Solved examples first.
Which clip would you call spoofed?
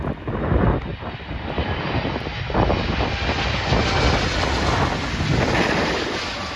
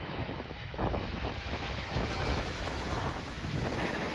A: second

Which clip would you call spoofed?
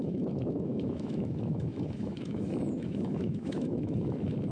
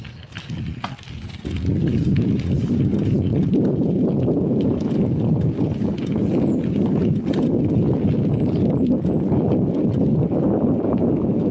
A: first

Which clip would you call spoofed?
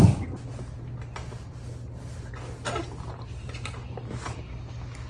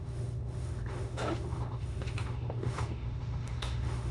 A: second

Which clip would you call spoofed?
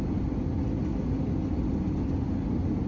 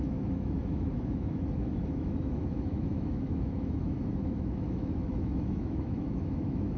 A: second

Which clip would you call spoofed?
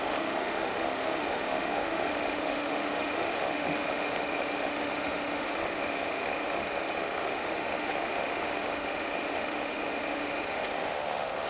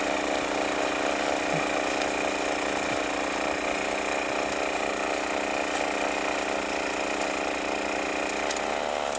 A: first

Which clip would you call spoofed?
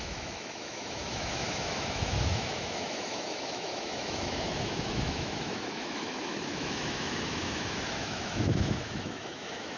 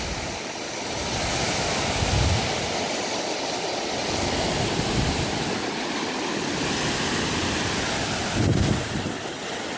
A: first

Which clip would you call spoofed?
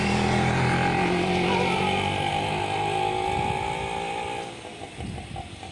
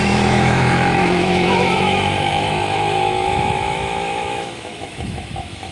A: second